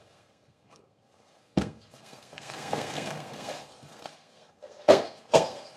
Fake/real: fake